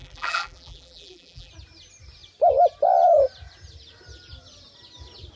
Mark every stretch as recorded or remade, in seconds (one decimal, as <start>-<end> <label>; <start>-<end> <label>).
0.0-1.5 remade; 1.5-5.4 recorded